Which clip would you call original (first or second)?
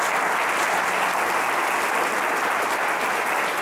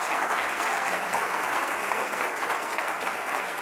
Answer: first